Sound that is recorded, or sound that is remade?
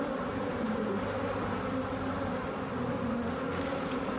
recorded